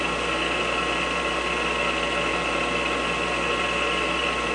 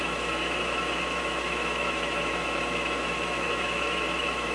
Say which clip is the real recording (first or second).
first